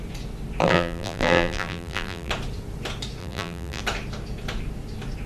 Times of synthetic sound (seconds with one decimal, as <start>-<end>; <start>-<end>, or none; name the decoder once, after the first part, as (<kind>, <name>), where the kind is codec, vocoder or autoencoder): 0.6-2.3 (vocoder, BigVGAN v2); 3.2-3.8